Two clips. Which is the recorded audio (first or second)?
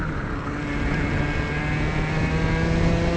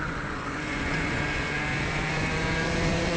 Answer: first